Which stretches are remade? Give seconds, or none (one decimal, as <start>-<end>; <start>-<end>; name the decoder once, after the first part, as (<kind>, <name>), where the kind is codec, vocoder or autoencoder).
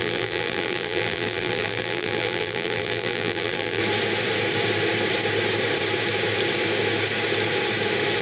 0.0-3.8 (vocoder, BigVGAN v2)